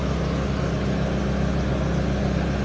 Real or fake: real